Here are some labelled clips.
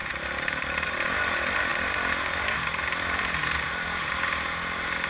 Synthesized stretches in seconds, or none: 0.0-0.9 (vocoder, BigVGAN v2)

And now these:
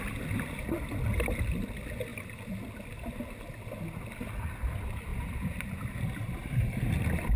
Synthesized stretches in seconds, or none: none

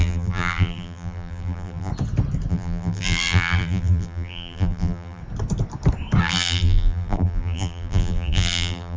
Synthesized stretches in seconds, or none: 0.0-1.9 (vocoder, BigVGAN v2); 2.5-5.2; 6.2-9.0

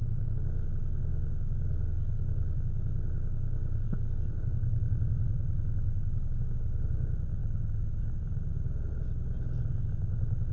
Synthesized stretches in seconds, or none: 7.4-8.9 (vocoder, BigVGAN v2)